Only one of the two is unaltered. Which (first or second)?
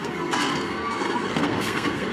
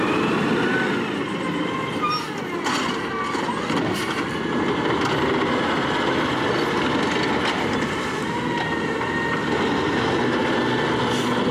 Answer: second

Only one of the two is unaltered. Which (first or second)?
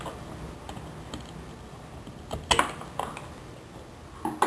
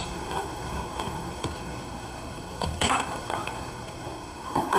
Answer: first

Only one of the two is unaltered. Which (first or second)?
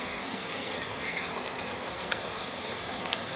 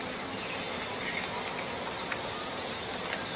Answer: second